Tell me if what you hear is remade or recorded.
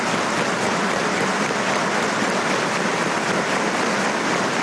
recorded